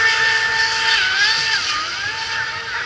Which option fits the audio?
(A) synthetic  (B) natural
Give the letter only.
B